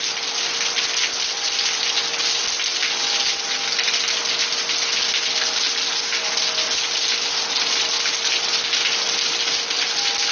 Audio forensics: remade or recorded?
recorded